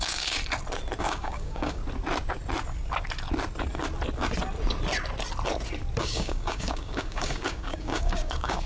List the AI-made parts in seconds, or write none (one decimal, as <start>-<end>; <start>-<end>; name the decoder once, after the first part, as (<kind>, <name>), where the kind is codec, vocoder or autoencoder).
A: 0.0-0.4 (codec, DAC); 1.0-1.8; 6.0-8.7